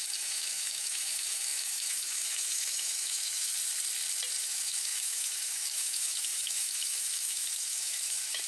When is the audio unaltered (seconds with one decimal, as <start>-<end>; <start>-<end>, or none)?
3.5-4.4